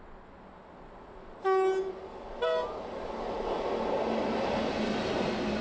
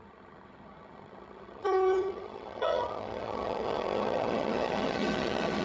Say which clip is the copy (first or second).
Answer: second